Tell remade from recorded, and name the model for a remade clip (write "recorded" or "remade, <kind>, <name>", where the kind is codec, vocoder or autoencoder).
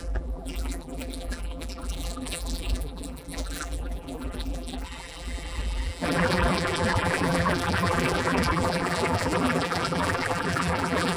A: remade, vocoder, BigVGAN v2